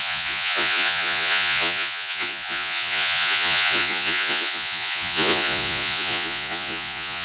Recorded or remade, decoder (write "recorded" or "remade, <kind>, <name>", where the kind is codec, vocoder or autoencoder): remade, vocoder, Vocos